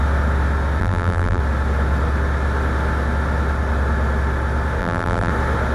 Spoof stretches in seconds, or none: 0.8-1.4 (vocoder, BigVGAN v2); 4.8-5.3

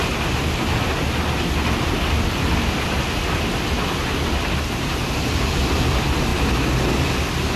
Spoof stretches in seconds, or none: none

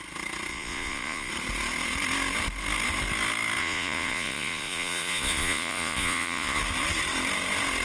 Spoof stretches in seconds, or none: 0.5-1.3 (vocoder, Vocos); 3.6-6.6

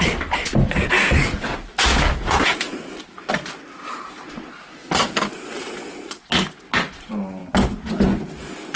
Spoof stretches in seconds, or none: 1.9-2.7 (vocoder, Vocos)

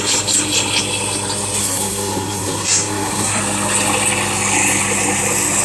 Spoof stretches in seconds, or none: 1.6-3.4 (codec, SNAC)